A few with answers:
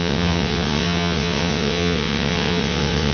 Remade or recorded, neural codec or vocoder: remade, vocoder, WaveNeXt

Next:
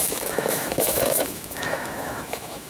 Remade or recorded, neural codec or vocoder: remade, autoencoder, DAC-VAE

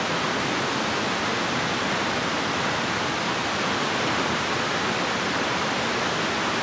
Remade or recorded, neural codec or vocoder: recorded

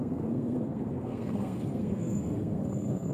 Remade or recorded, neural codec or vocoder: remade, codec, SNAC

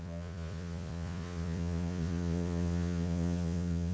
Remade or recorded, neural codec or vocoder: remade, vocoder, Vocos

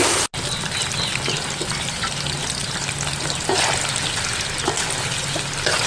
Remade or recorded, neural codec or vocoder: recorded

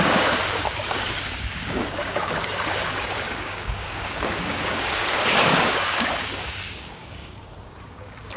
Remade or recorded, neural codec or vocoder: remade, codec, DAC